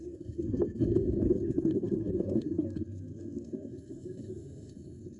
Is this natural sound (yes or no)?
no